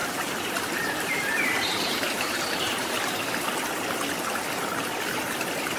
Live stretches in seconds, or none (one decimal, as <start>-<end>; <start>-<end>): 3.4-5.8